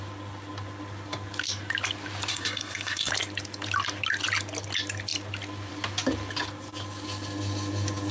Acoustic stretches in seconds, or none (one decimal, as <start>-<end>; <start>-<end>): 0.0-2.3; 3.1-8.1